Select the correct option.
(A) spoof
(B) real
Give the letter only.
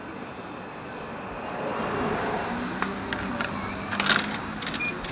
B